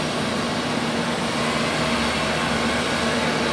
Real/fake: real